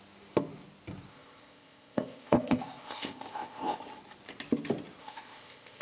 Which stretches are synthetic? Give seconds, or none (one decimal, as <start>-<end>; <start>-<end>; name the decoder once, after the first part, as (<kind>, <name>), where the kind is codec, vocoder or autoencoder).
1.1-3.8 (codec, ZipCodec); 5.0-5.8